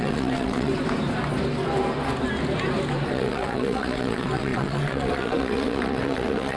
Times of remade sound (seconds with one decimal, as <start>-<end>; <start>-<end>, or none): 0.0-0.7; 3.1-6.6